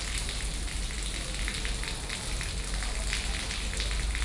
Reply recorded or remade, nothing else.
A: recorded